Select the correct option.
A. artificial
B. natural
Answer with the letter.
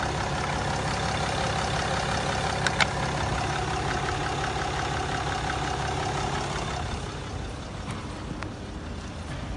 B